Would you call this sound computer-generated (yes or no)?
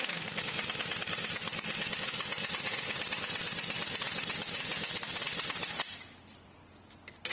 no